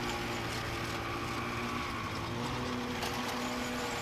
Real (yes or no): yes